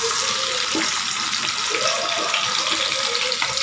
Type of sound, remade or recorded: remade